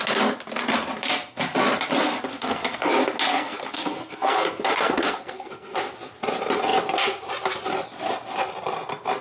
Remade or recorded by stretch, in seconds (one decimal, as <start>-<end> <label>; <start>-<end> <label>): 0.0-2.3 recorded; 2.3-2.9 remade; 2.9-3.3 recorded; 3.3-5.8 remade; 5.8-9.2 recorded